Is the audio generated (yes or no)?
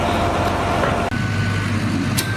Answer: no